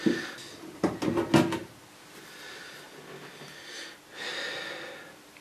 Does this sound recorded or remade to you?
recorded